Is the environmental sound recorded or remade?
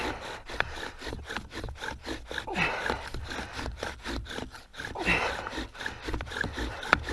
recorded